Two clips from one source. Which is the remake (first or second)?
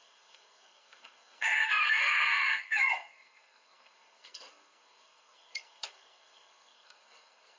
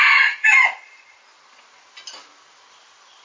first